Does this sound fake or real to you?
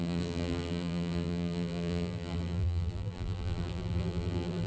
fake